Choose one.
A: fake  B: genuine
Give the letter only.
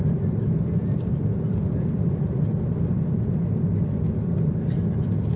B